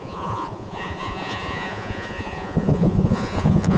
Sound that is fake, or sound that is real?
fake